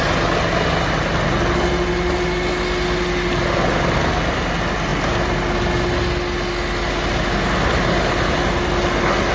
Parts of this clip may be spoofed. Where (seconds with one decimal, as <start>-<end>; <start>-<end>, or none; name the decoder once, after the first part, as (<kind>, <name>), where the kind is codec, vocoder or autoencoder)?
none